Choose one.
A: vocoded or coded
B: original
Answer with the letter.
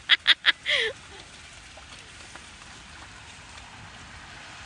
B